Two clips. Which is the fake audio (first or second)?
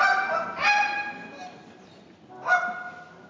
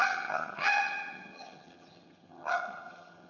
second